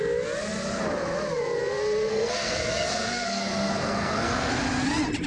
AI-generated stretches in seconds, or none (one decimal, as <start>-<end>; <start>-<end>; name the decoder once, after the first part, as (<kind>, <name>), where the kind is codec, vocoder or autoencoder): 2.1-4.5 (codec, SNAC)